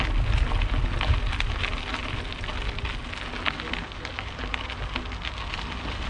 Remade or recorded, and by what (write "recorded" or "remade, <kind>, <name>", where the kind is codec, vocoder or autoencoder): recorded